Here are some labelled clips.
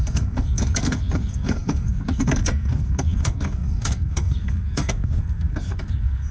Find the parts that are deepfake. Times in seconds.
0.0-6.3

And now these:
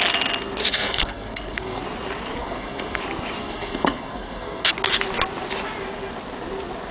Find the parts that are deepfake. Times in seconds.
0.7-1.8; 2.4-3.0; 3.4-4.7

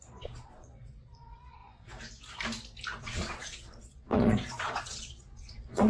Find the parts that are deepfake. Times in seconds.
0.0-1.6; 3.0-5.9

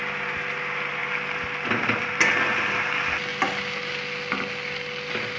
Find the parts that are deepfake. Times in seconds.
none

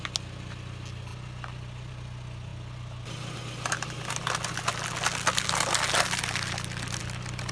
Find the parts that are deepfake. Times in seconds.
none

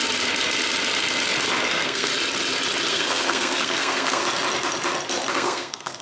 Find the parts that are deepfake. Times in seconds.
1.7-2.1; 2.9-4.2; 5.3-6.0